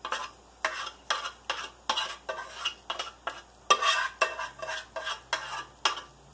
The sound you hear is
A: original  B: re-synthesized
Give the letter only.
A